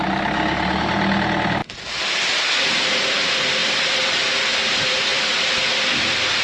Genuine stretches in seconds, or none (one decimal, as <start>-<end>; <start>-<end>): 0.0-6.4

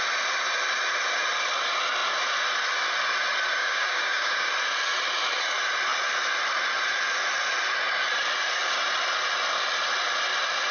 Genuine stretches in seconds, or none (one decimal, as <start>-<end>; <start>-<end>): 0.0-3.6; 4.5-10.7